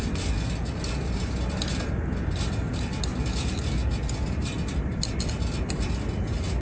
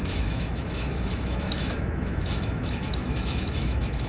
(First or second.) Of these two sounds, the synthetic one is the second